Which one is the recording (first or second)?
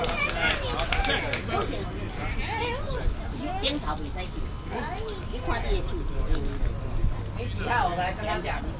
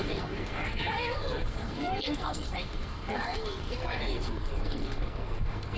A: first